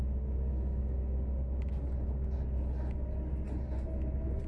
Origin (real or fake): real